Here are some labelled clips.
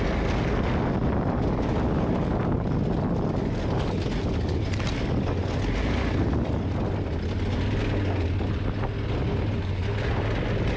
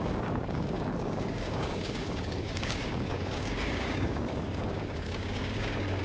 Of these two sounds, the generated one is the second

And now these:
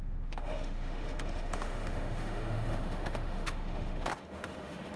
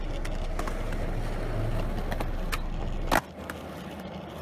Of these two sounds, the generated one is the first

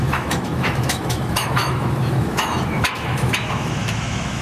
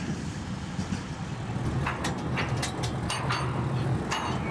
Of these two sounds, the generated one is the first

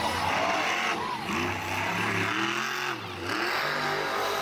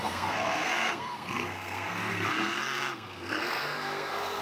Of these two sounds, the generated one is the second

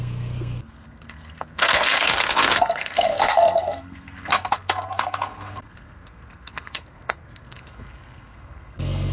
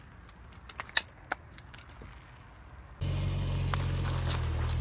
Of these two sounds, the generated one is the first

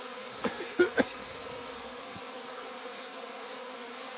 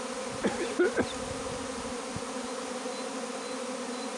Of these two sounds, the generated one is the first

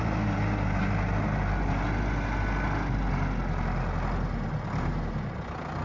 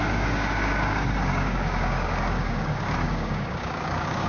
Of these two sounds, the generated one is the second